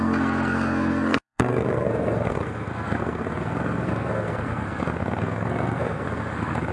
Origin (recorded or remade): remade